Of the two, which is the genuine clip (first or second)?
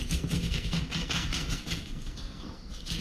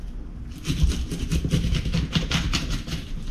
second